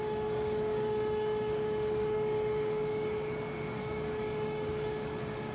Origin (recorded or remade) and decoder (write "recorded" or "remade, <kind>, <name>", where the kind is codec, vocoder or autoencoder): remade, codec, DAC